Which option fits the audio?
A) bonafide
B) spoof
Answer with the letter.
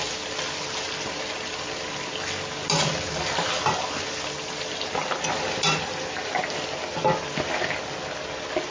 A